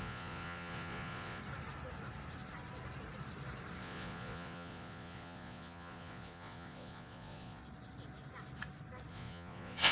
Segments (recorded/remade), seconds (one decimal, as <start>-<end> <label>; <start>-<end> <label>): 0.0-1.4 remade; 1.4-3.8 recorded; 3.8-7.6 remade; 7.6-9.1 recorded; 9.1-9.9 remade